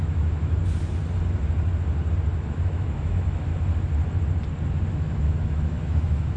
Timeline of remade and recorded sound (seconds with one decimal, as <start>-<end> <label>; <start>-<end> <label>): 0.0-0.6 remade; 0.6-2.3 recorded; 2.3-3.5 remade; 3.5-4.9 recorded; 4.9-6.4 remade